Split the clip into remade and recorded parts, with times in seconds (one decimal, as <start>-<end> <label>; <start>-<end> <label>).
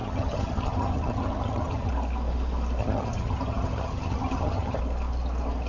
0.0-1.9 remade; 1.9-2.8 recorded; 2.8-4.8 remade; 4.8-5.7 recorded